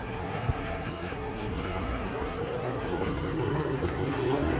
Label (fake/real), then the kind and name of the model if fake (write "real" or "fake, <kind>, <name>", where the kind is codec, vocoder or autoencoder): fake, codec, SNAC